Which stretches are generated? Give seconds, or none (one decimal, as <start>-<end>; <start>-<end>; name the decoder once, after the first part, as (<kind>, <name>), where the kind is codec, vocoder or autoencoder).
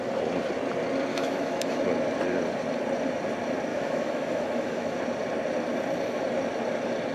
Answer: 1.1-1.8 (autoencoder, DAC-VAE); 3.7-5.0